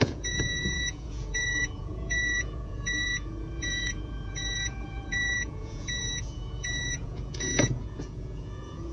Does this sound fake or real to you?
fake